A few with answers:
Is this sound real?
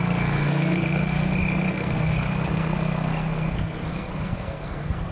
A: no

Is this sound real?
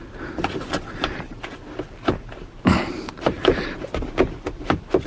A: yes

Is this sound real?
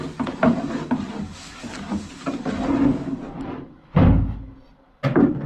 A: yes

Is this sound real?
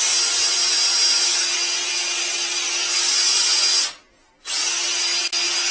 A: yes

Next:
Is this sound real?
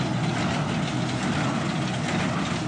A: yes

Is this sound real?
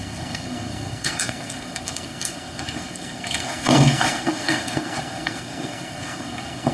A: no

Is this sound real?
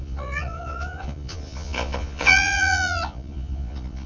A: no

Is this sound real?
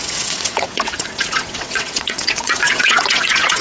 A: no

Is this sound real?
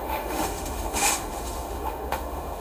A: no